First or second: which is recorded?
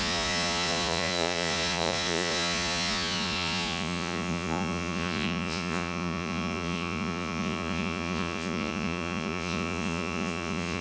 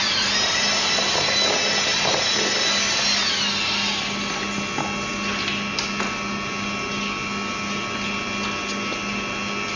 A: second